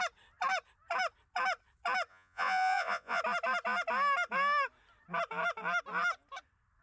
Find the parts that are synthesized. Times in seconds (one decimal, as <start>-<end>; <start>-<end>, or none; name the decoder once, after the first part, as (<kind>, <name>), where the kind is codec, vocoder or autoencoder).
2.1-3.2 (vocoder, Vocos)